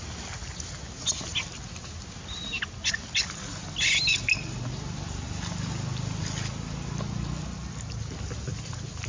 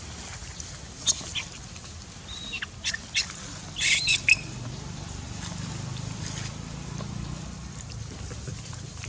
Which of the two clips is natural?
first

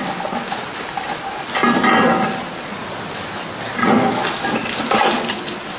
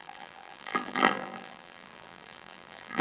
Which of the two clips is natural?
first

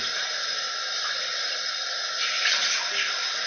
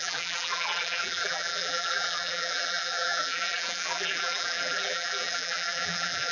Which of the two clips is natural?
first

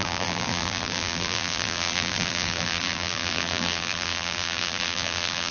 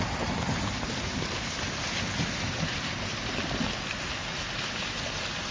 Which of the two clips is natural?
second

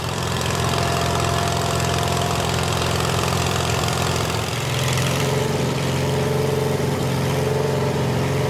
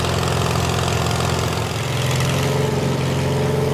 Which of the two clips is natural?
second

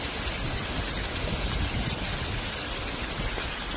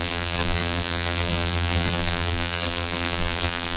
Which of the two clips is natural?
first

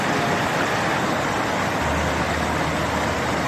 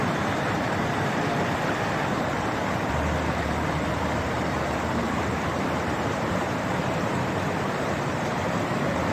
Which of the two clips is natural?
first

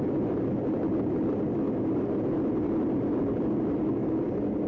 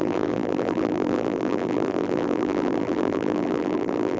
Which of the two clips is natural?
first